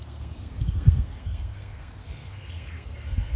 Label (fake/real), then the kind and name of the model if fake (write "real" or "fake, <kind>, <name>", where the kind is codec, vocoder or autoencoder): fake, codec, SNAC